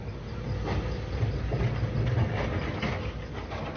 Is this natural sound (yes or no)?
yes